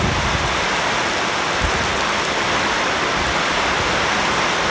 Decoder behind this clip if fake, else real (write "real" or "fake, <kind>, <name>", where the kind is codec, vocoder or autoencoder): real